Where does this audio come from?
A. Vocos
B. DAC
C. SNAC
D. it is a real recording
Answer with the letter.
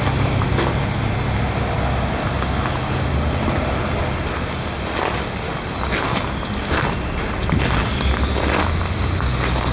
D